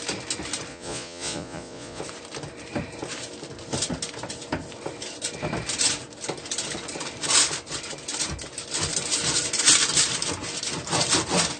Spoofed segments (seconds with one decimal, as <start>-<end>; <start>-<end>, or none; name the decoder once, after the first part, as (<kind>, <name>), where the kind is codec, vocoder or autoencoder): 0.7-2.0 (vocoder, Vocos)